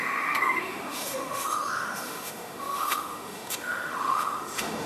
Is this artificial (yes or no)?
yes